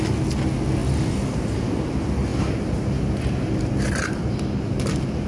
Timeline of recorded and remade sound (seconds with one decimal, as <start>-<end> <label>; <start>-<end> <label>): 0.0-5.3 recorded